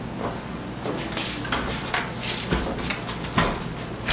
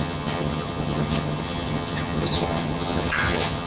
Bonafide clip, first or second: first